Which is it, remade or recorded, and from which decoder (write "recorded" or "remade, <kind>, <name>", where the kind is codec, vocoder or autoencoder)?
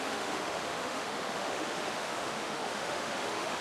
remade, autoencoder, DAC-VAE